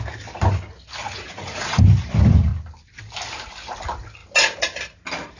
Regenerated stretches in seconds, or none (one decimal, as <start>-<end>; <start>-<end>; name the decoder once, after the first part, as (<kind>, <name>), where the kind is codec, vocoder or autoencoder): 1.0-1.8 (vocoder, Vocos)